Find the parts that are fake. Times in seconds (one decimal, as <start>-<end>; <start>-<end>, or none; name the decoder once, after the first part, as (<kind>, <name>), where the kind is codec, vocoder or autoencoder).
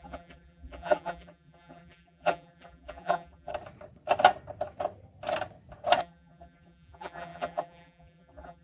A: 0.0-3.5 (vocoder, BigVGAN v2); 6.0-8.6